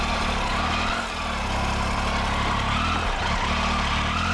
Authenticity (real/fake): real